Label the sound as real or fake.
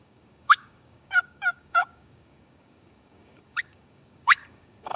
fake